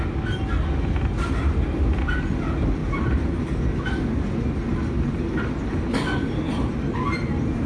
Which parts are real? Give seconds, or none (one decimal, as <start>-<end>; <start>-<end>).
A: 0.0-7.7